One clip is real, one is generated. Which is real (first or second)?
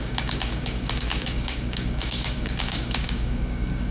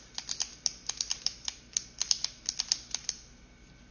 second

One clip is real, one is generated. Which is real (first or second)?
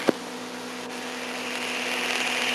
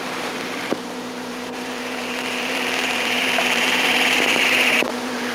first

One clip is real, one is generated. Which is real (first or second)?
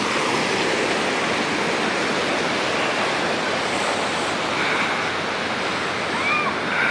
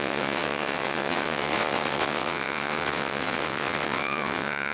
first